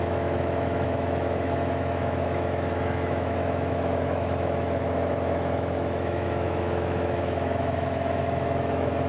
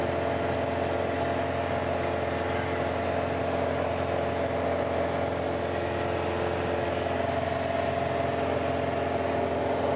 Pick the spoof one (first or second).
first